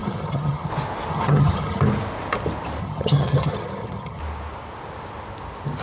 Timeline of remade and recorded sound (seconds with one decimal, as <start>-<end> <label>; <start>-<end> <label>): 0.0-0.7 remade; 0.7-1.1 recorded; 1.1-1.8 remade; 1.8-2.8 recorded; 2.8-4.2 remade; 4.2-5.8 recorded